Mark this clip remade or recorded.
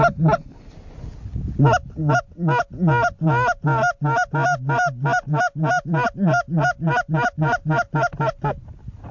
recorded